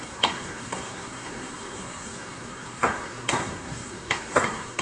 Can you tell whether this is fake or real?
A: fake